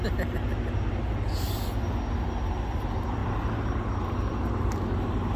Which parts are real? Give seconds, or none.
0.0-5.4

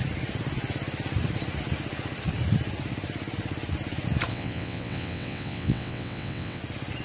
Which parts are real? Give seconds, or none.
0.0-4.3; 6.6-7.0